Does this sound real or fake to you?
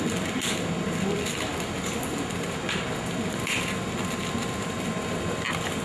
real